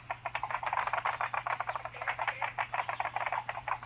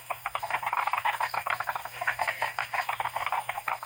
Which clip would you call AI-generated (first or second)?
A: second